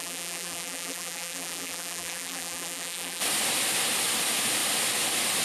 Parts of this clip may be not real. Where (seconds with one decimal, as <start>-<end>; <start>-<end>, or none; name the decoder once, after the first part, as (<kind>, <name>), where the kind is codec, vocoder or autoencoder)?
0.0-3.2 (vocoder, BigVGAN v2)